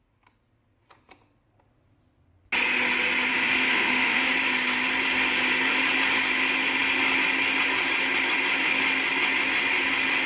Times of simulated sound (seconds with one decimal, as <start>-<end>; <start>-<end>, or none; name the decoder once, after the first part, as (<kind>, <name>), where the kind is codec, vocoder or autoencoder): 3.3-4.3 (autoencoder, DAC-VAE)